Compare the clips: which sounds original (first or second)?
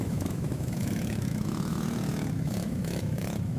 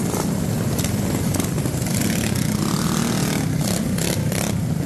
second